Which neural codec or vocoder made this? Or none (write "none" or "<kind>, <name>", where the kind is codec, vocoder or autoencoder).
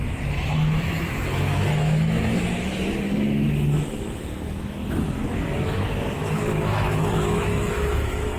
autoencoder, DAC-VAE